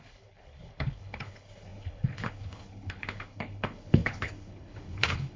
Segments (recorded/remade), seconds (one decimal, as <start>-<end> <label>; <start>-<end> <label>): 0.0-5.4 remade